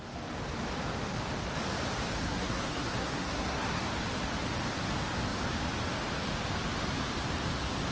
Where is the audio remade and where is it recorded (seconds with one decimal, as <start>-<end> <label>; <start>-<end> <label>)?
0.0-2.2 recorded; 2.2-3.8 remade; 3.8-7.9 recorded